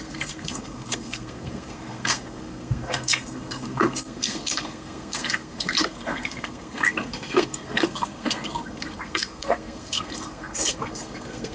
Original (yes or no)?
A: no